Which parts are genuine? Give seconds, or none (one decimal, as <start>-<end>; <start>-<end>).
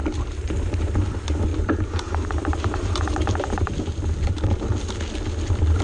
0.7-1.5; 3.7-5.8